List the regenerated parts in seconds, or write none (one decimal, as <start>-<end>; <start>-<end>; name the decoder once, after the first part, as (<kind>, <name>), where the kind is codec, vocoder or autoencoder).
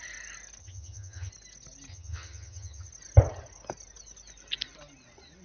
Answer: 0.6-1.3 (vocoder, HiFi-GAN); 1.9-2.9